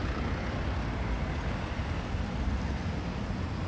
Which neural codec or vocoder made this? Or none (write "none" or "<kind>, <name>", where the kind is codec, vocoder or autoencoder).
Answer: none